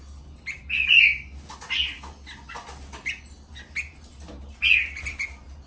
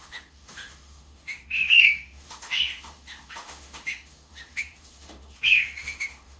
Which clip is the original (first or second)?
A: first